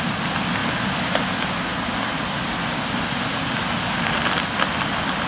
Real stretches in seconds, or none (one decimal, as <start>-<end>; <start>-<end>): 0.0-5.3